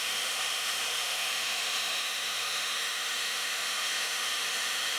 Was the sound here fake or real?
fake